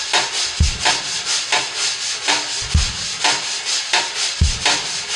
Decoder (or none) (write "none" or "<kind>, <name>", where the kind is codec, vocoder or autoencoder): none